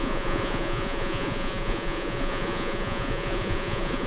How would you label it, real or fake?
fake